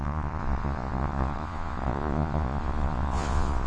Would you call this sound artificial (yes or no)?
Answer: yes